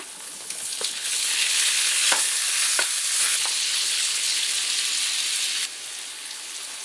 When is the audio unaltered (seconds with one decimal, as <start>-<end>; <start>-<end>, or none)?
2.4-3.2; 4.5-6.1